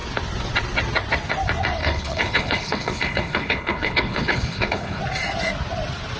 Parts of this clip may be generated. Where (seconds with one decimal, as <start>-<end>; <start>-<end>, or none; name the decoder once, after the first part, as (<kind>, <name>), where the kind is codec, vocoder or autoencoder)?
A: 1.8-5.0 (codec, HILCodec)